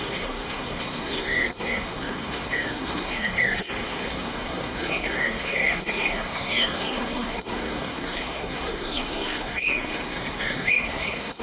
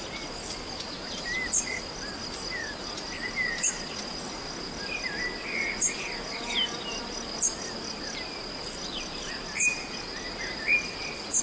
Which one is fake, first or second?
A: first